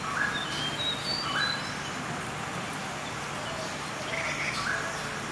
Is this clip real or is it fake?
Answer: real